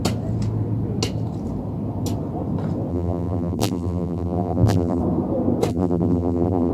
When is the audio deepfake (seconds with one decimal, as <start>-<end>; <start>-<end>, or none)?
2.9-5.0; 5.7-6.7